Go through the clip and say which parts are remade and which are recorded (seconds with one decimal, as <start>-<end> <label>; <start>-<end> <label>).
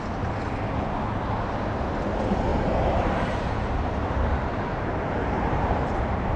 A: 0.0-2.5 recorded; 2.5-6.4 remade